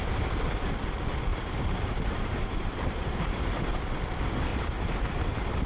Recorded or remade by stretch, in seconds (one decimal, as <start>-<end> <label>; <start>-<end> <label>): 0.0-1.3 recorded; 1.3-3.8 remade; 3.8-4.5 recorded; 4.5-5.7 remade